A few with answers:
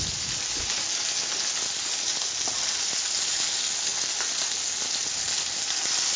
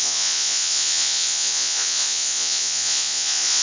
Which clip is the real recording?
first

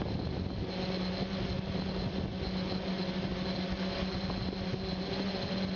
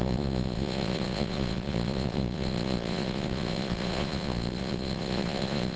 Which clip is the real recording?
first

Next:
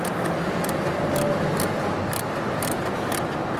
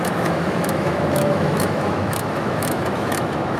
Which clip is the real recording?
first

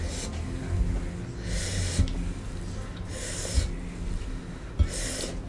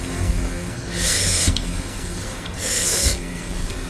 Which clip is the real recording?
first